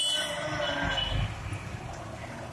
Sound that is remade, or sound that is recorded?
recorded